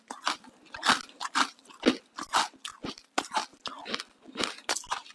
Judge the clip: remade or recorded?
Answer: recorded